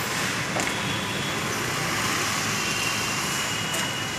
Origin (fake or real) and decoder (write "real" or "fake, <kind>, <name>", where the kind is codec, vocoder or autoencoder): real